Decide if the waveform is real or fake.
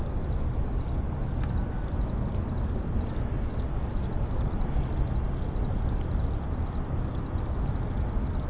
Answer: real